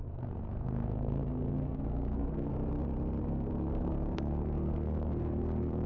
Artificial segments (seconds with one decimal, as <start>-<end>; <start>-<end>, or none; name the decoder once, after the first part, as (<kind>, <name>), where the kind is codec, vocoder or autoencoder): 0.0-2.5 (codec, SNAC); 3.2-5.9